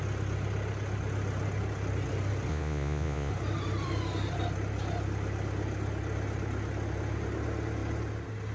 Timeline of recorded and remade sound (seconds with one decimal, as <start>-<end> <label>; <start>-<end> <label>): 0.0-2.5 recorded; 2.5-3.3 remade; 3.3-8.5 recorded